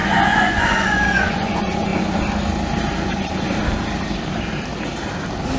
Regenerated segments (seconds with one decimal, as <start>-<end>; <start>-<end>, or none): 0.0-1.9